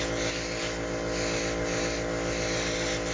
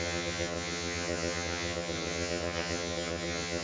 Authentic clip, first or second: first